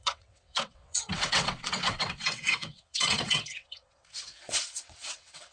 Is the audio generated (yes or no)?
yes